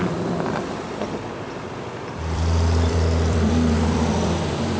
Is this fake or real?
fake